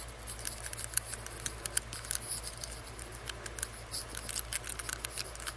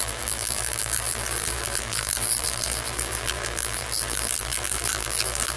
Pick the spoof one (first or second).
second